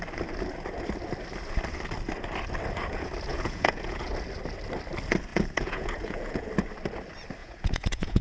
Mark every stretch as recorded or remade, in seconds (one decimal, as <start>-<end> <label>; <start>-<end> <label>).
0.0-3.3 recorded; 3.3-4.1 remade; 4.1-5.3 recorded; 5.3-6.5 remade; 6.5-7.4 recorded; 7.4-8.2 remade